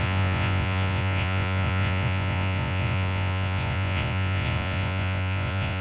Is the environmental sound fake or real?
fake